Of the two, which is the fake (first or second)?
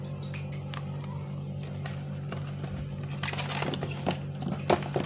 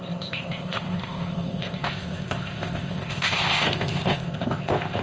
second